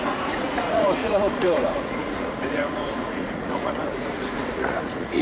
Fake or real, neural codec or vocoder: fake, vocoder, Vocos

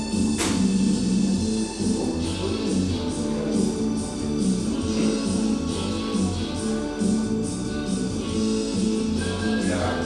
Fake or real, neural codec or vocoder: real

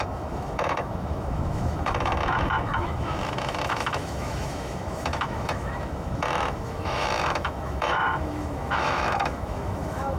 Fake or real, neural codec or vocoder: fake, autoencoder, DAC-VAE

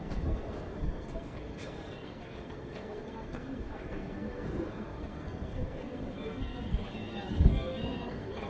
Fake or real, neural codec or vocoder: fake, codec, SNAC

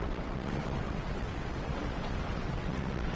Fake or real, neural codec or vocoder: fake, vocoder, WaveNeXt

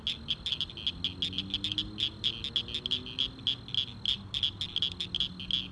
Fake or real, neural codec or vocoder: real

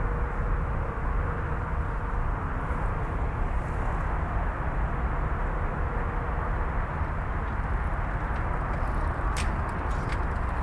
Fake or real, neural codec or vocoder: real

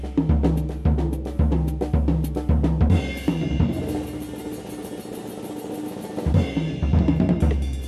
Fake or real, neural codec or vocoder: real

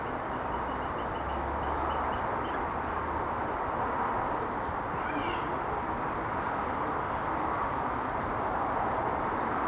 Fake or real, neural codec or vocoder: real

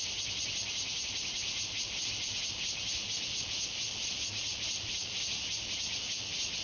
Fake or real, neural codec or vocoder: real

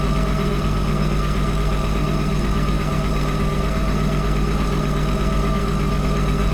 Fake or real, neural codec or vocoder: fake, codec, SNAC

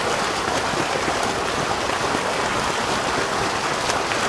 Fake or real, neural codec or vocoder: real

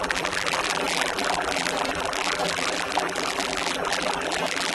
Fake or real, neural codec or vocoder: fake, vocoder, BigVGAN v2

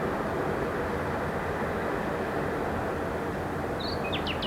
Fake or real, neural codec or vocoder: real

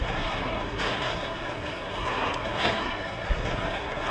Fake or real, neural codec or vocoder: fake, codec, SNAC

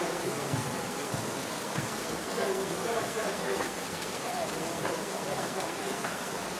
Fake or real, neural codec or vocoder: fake, codec, SNAC